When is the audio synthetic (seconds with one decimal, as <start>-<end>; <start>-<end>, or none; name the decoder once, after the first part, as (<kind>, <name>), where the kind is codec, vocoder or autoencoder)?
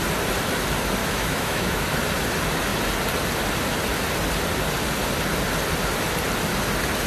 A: 1.0-1.9 (autoencoder, DAC-VAE)